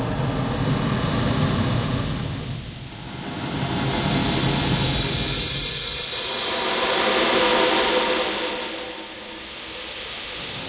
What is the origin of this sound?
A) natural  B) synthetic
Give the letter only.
A